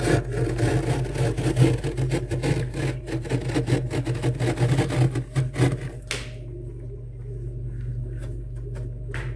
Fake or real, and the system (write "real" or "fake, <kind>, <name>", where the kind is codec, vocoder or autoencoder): real